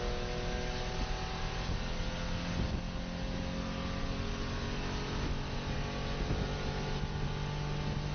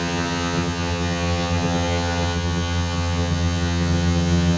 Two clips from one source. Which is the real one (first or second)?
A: first